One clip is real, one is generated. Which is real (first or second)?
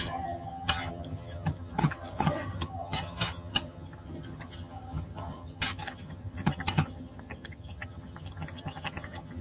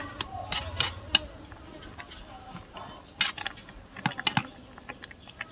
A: second